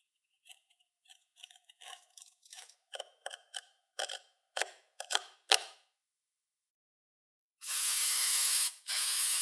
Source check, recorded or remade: remade